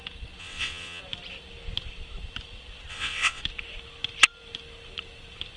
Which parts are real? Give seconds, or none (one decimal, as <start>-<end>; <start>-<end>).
0.0-0.4; 1.0-2.9; 3.4-5.6